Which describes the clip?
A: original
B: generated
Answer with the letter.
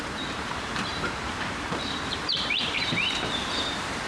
B